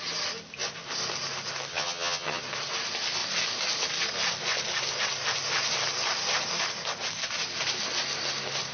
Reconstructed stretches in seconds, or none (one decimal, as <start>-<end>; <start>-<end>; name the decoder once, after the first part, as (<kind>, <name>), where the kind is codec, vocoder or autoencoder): 1.7-2.4 (vocoder, HiFi-GAN)